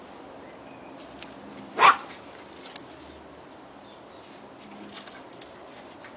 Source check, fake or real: real